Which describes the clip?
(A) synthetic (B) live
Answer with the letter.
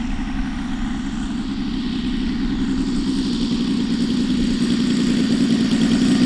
B